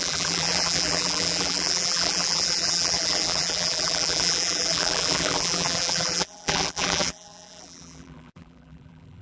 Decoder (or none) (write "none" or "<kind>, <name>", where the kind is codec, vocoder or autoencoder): vocoder, BigVGAN v2